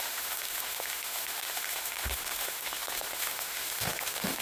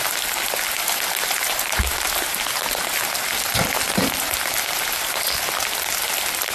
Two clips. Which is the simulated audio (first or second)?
first